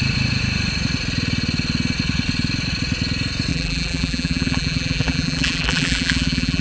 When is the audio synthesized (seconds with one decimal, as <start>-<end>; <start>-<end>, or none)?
3.5-6.6